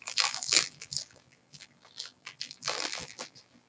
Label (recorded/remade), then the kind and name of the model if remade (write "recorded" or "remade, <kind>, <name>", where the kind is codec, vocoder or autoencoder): remade, vocoder, BigVGAN v2